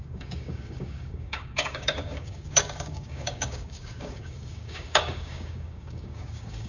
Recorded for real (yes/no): no